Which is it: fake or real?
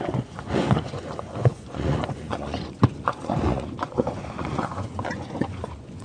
fake